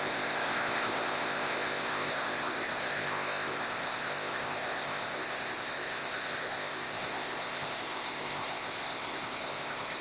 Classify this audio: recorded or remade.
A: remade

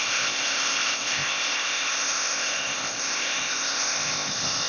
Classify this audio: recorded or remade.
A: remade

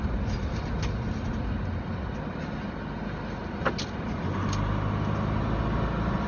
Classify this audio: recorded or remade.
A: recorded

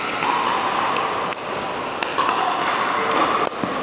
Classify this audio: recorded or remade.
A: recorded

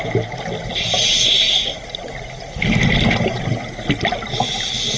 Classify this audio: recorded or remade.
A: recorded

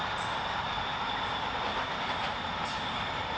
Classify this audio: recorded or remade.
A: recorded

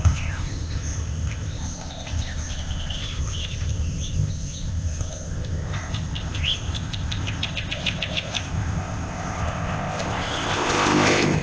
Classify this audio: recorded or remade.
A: remade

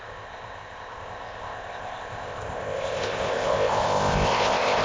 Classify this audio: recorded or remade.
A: remade